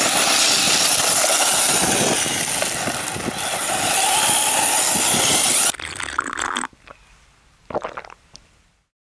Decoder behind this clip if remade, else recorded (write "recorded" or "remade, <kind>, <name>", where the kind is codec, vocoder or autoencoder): recorded